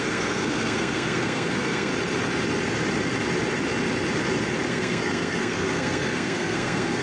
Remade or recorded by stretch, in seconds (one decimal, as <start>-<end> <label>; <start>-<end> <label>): 0.0-1.9 remade; 1.9-4.7 recorded; 4.7-7.0 remade